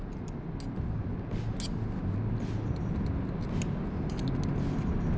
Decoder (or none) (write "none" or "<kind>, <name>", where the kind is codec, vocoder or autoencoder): none